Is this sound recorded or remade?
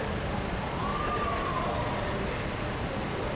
recorded